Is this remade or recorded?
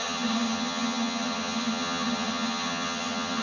remade